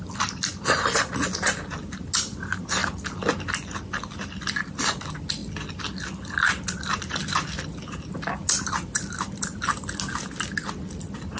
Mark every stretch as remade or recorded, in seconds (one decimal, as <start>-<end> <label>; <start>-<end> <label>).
0.0-11.4 recorded